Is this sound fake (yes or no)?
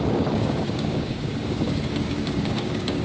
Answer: yes